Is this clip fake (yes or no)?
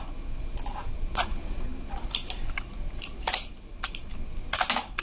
no